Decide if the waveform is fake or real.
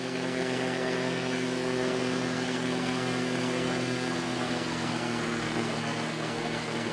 fake